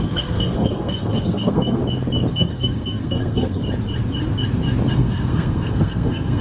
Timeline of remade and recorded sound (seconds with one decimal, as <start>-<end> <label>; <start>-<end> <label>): 0.0-1.8 remade; 1.8-2.3 recorded; 2.3-3.6 remade; 3.6-4.9 recorded; 4.9-6.4 remade